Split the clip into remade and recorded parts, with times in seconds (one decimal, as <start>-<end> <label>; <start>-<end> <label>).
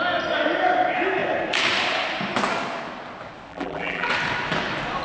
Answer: 0.0-3.5 recorded; 3.5-4.1 remade; 4.1-5.0 recorded